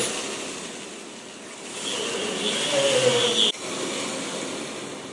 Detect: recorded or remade recorded